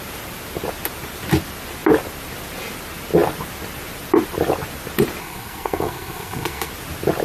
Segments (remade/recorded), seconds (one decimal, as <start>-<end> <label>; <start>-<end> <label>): 0.0-5.2 recorded; 5.2-6.7 remade; 6.7-7.2 recorded